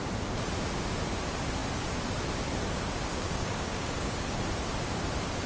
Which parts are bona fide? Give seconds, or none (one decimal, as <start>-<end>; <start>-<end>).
0.0-3.1; 4.4-5.5